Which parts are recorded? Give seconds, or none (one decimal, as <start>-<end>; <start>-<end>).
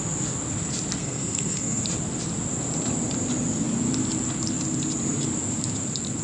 0.0-1.0; 1.8-6.2